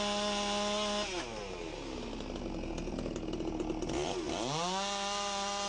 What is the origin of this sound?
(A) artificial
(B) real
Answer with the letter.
B